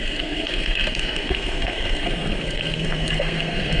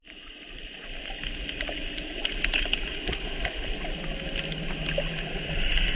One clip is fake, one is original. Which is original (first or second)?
second